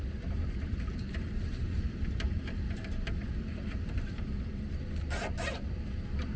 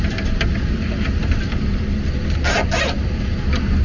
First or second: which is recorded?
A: second